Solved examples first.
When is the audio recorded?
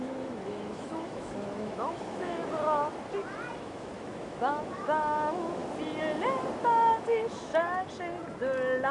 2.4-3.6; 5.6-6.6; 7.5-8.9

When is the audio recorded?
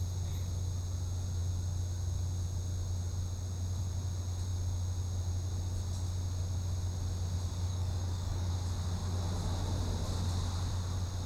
0.0-7.7; 8.5-11.3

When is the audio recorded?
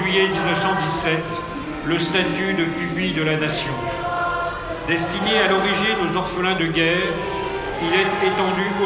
0.0-8.9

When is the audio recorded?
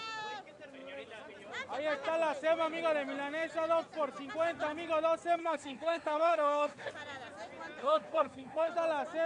0.0-5.4; 6.9-7.8; 8.7-9.3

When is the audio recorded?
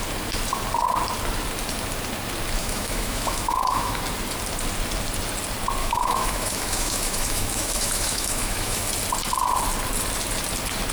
0.0-2.6; 4.0-5.8; 8.9-10.9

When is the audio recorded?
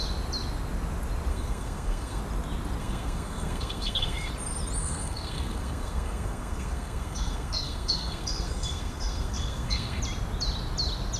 0.0-1.3; 2.2-2.8; 4.3-4.8; 10.0-11.2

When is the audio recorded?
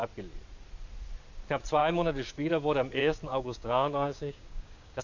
0.0-1.8; 2.5-3.0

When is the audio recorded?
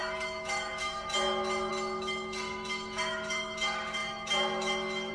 none